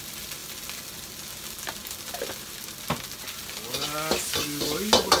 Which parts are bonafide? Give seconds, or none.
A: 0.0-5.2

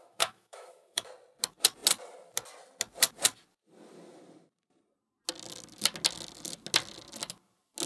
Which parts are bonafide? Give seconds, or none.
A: 1.1-7.9